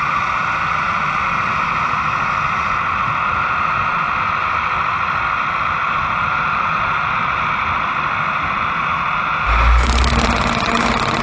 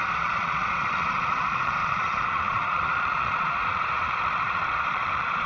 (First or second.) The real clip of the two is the first